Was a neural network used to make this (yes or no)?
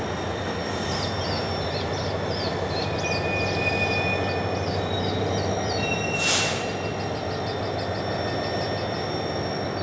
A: no